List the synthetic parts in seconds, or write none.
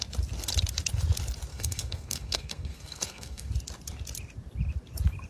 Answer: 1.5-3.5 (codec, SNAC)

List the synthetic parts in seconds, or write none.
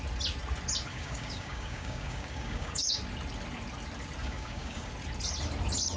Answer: 0.9-3.0 (codec, DAC); 4.2-4.9